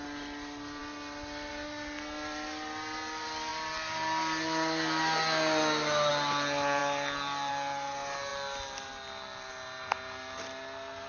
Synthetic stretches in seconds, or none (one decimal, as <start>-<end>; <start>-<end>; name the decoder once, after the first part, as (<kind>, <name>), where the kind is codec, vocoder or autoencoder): none